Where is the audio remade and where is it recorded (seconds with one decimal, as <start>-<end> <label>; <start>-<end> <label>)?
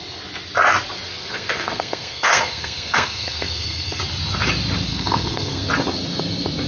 0.0-1.1 recorded; 1.1-4.0 remade; 4.0-4.9 recorded; 4.9-5.7 remade; 5.7-6.7 recorded